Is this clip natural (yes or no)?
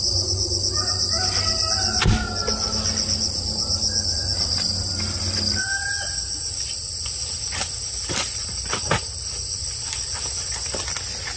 yes